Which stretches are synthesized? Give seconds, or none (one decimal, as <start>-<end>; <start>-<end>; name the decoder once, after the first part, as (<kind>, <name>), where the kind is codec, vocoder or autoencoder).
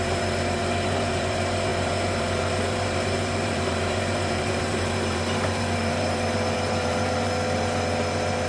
0.0-8.5 (vocoder, BigVGAN v2)